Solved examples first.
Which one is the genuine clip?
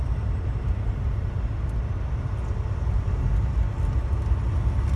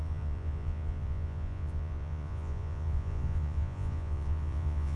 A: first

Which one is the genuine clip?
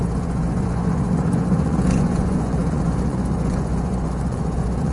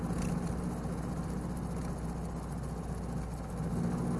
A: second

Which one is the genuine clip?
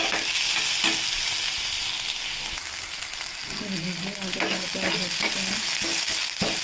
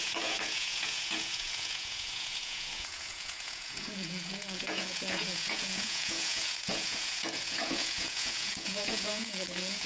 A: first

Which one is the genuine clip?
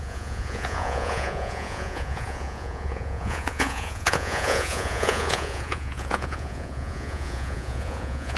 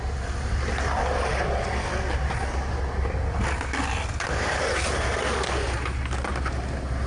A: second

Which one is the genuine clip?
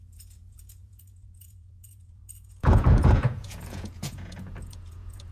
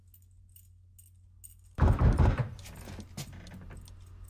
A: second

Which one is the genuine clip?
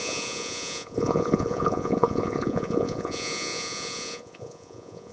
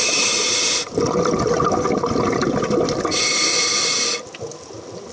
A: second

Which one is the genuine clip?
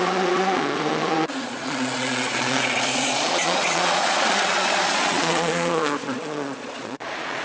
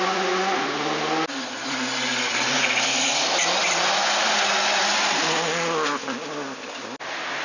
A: second